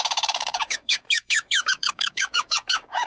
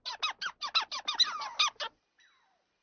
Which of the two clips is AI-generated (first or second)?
first